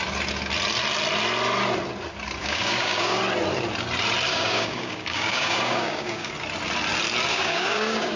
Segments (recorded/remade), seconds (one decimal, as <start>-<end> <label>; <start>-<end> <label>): 0.0-2.4 recorded; 2.4-3.2 remade; 3.2-4.3 recorded; 4.3-6.3 remade; 6.3-7.3 recorded; 7.3-8.2 remade